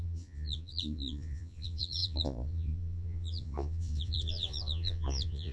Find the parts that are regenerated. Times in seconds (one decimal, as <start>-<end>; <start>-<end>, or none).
0.0-5.5